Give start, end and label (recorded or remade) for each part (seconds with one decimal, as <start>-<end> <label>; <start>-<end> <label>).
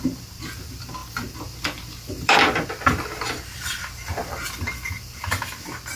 0.0-1.0 recorded; 1.0-2.4 remade; 2.4-4.2 recorded; 4.2-5.3 remade; 5.3-6.0 recorded